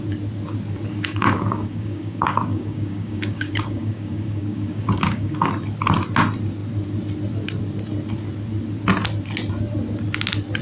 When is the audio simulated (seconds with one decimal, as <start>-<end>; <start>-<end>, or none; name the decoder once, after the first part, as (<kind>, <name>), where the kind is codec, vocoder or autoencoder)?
0.9-5.5 (codec, DAC)